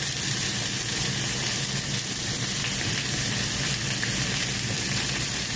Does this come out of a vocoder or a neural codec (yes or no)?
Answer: yes